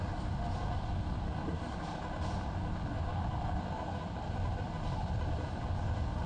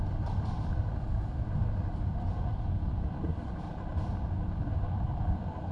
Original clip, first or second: first